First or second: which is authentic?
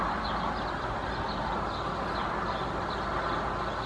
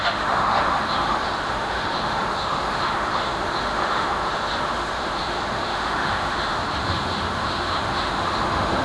first